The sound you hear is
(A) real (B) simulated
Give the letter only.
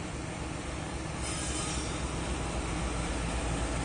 A